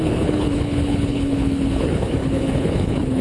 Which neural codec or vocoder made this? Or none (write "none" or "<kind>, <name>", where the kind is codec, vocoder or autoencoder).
codec, HILCodec